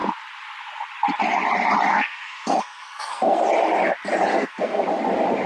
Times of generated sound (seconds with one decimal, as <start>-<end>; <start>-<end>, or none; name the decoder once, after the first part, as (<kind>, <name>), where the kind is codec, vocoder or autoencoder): 1.9-3.4 (codec, SNAC); 4.3-4.8